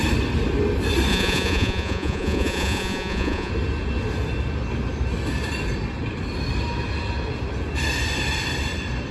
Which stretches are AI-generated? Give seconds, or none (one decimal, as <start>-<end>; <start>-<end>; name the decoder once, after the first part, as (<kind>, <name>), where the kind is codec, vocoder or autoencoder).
1.1-3.5 (vocoder, Vocos)